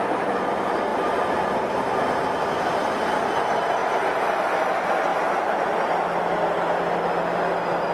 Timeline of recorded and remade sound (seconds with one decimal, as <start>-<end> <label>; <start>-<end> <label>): 0.0-0.9 recorded; 0.9-2.0 remade; 2.0-5.1 recorded; 5.1-5.7 remade; 5.7-7.9 recorded